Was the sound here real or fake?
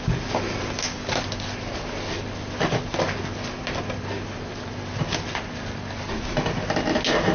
real